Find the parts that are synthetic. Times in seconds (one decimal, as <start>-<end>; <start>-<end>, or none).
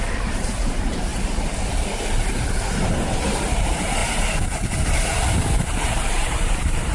0.0-1.1; 3.1-4.0; 6.1-6.9